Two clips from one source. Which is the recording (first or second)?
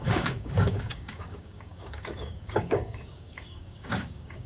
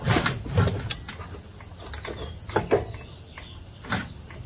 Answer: second